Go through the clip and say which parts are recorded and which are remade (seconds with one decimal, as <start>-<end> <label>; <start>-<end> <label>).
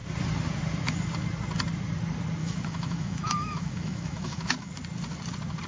0.0-2.4 recorded; 2.4-4.7 remade; 4.7-5.7 recorded